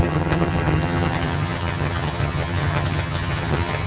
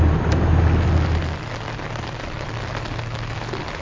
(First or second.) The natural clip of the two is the second